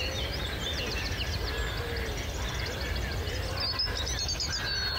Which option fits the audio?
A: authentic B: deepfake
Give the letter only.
A